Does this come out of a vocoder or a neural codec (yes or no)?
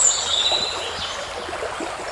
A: no